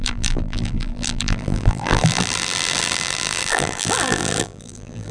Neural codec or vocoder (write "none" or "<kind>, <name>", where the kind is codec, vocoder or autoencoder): vocoder, BigVGAN v2